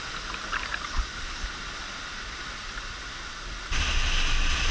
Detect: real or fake real